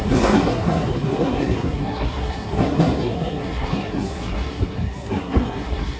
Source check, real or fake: fake